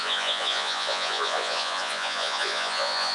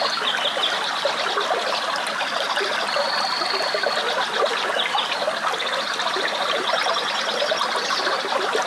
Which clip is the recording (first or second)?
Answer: second